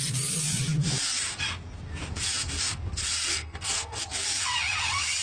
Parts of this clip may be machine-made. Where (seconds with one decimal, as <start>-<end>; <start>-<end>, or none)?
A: 3.3-4.0